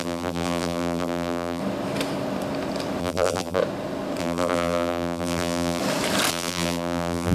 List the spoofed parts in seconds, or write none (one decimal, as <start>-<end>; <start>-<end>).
0.0-1.6; 3.0-3.6; 4.2-5.8; 6.3-7.3